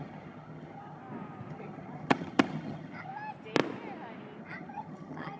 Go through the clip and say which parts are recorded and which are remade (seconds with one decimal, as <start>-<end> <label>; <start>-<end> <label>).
0.0-1.0 remade; 1.0-1.5 recorded; 1.5-3.1 remade; 3.1-4.4 recorded; 4.4-5.4 remade